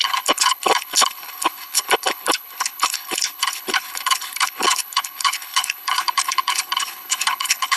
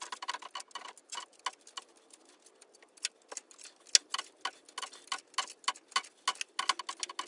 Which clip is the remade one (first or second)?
first